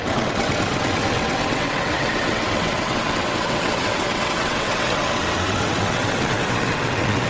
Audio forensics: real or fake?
fake